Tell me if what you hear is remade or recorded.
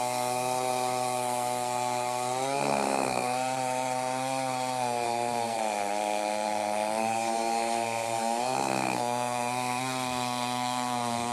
remade